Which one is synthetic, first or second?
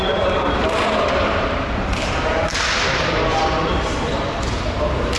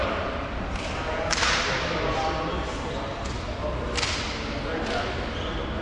first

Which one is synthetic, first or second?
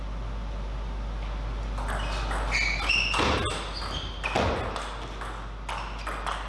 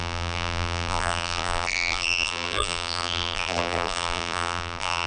second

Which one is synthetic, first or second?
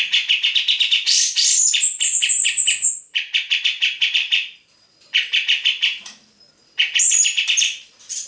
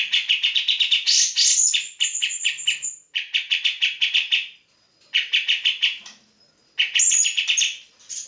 first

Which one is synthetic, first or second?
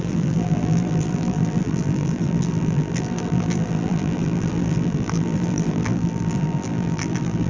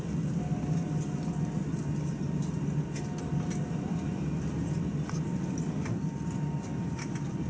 first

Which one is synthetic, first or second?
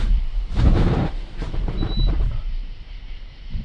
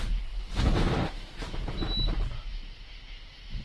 first